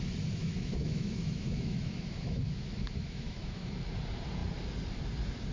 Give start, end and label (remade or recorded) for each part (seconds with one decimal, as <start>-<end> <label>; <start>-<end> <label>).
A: 0.0-0.4 recorded; 0.4-3.7 remade; 3.7-5.5 recorded